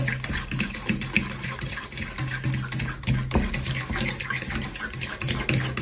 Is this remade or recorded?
recorded